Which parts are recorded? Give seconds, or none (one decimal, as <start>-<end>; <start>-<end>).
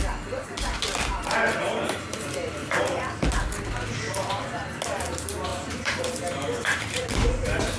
0.0-2.6; 3.3-5.5; 6.0-7.8